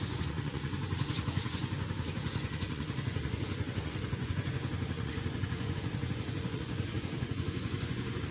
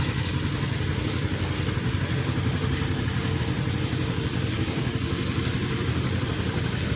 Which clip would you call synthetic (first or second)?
first